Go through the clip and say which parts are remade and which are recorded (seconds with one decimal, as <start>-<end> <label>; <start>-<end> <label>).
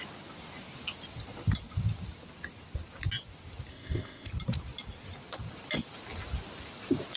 0.0-3.7 recorded; 3.7-4.3 remade; 4.3-7.2 recorded